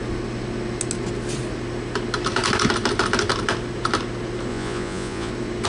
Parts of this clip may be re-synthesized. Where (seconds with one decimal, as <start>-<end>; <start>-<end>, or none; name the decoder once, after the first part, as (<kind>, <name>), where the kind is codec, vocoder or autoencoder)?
4.5-5.3 (vocoder, Vocos)